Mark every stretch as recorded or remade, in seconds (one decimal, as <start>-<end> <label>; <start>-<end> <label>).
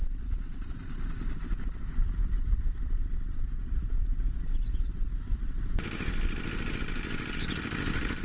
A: 0.0-0.7 remade; 0.7-2.0 recorded; 2.0-6.8 remade; 6.8-8.2 recorded